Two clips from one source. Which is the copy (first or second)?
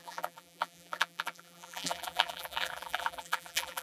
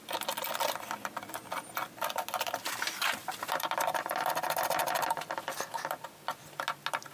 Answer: first